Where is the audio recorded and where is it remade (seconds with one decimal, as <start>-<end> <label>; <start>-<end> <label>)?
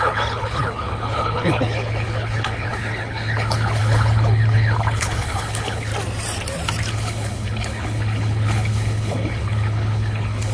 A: 0.0-5.9 remade; 5.9-6.9 recorded; 6.9-10.5 remade